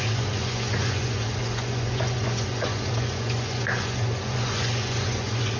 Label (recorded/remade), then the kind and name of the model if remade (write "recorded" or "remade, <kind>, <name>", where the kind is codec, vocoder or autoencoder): remade, vocoder, Vocos